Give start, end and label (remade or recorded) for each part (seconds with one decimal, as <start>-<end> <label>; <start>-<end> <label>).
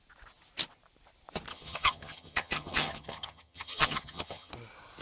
0.0-1.5 recorded; 1.5-4.5 remade; 4.5-5.0 recorded